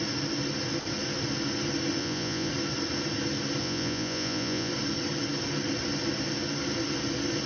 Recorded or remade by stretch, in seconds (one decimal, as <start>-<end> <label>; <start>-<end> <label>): 0.0-2.0 recorded; 2.0-2.5 remade; 2.5-3.6 recorded; 3.6-4.7 remade; 4.7-7.5 recorded